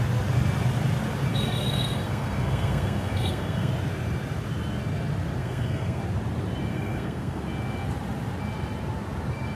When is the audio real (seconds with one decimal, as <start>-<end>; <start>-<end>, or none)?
0.0-1.3; 3.7-5.4; 6.0-6.7; 7.4-9.5